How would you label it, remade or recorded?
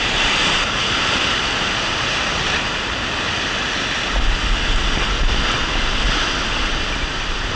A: recorded